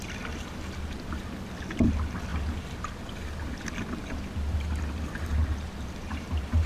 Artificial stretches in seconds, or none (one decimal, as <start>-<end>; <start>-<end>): 5.3-6.7